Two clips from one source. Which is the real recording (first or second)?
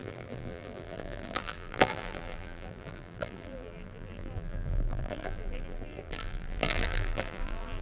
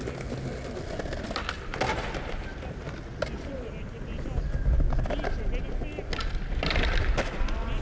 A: second